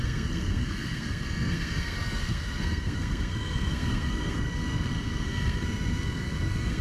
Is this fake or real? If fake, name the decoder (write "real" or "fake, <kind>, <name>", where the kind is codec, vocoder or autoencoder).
fake, codec, SNAC